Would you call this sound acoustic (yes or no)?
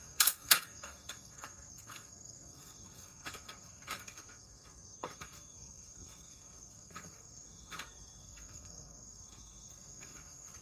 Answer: no